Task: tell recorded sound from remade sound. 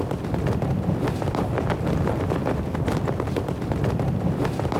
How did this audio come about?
remade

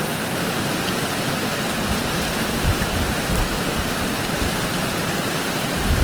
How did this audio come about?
recorded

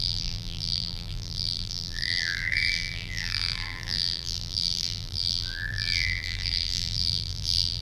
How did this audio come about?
remade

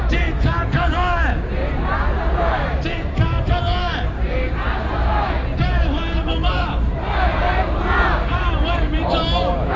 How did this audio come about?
remade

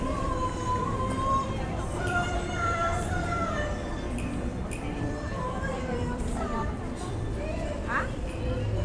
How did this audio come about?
remade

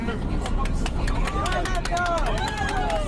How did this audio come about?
recorded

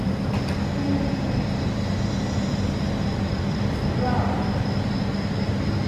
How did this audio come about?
recorded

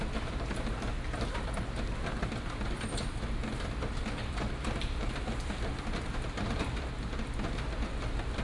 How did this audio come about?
remade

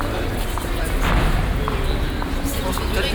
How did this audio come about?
recorded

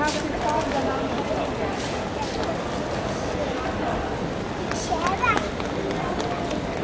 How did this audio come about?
recorded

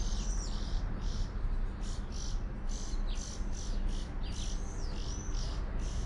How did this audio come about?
recorded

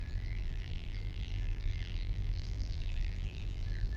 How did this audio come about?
remade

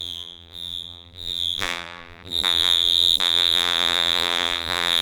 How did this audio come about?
remade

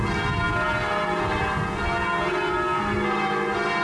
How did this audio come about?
recorded